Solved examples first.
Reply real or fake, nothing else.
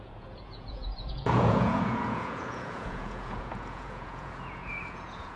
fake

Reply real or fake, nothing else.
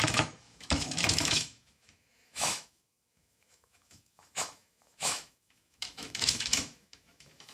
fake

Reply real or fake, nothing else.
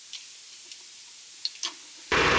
real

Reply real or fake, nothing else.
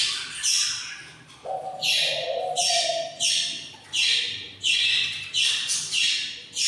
real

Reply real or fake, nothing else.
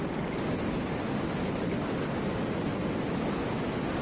real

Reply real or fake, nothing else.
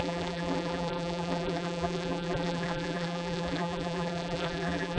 fake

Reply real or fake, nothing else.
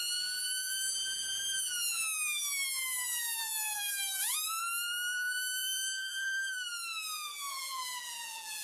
fake